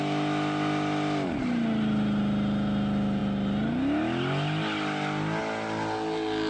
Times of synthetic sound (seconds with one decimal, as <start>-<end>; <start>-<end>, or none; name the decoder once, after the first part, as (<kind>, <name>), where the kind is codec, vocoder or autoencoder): none

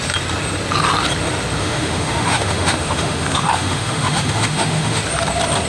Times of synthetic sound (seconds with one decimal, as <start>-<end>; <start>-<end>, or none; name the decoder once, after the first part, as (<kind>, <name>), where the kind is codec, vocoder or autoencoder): 1.6-5.0 (autoencoder, DAC-VAE)

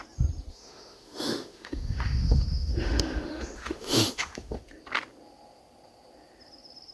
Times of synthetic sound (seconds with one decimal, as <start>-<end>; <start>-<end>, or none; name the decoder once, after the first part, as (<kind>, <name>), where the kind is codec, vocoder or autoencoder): 0.5-4.6 (autoencoder, DAC-VAE)